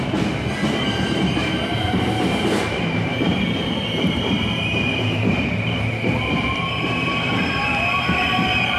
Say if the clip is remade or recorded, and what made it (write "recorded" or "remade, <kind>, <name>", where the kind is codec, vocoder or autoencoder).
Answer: remade, vocoder, BigVGAN v2